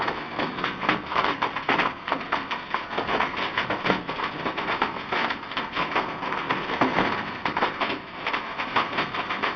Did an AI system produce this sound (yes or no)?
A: yes